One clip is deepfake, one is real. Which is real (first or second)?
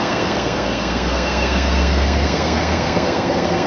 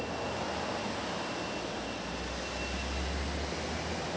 second